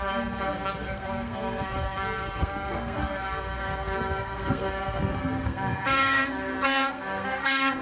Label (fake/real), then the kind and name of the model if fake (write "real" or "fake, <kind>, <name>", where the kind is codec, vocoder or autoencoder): fake, codec, SNAC